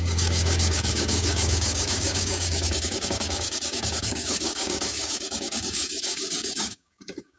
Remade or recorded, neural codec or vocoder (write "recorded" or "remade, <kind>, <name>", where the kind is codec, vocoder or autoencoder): remade, codec, DAC